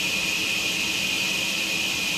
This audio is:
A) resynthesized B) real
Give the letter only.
B